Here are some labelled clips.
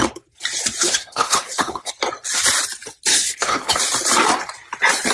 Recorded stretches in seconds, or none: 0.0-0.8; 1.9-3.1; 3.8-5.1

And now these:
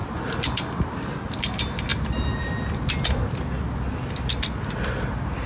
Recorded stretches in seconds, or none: 0.0-5.5

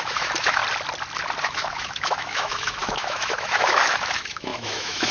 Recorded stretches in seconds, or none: 0.6-1.4

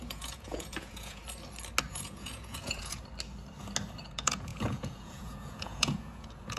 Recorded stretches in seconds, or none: 1.2-1.9; 3.0-4.0

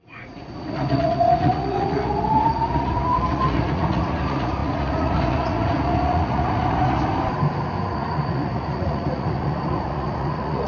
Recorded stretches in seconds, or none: 7.1-7.9

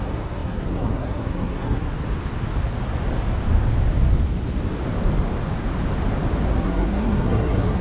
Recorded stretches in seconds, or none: 1.9-6.6

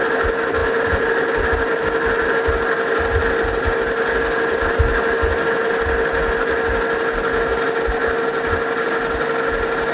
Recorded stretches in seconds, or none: 0.0-9.9